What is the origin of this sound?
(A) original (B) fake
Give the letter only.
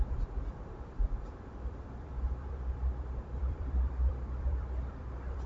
B